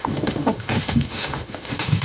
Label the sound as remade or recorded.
remade